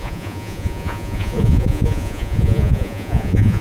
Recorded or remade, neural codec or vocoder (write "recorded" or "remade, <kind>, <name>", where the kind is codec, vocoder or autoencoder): remade, vocoder, Vocos